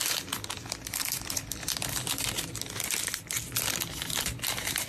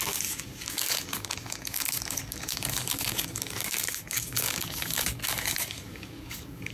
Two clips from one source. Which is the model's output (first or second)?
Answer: second